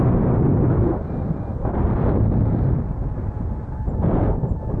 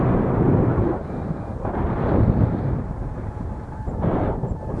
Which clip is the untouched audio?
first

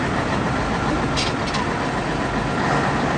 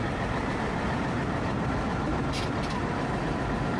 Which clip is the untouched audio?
first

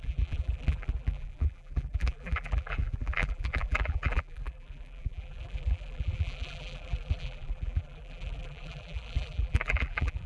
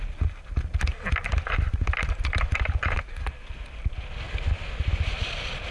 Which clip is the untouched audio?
second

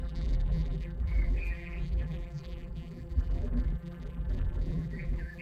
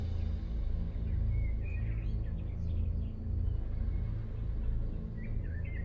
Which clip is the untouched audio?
second